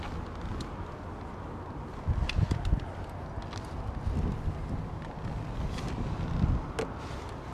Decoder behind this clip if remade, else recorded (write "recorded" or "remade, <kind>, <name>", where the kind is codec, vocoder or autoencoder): recorded